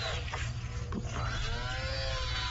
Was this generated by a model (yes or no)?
no